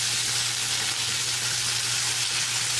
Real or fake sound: real